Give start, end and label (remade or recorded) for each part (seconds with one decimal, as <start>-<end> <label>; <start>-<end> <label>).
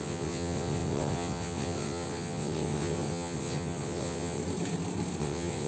0.0-4.4 remade; 4.4-5.2 recorded; 5.2-5.7 remade